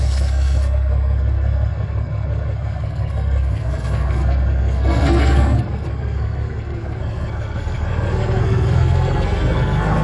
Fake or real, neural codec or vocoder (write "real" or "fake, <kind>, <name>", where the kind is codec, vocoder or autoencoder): fake, codec, SNAC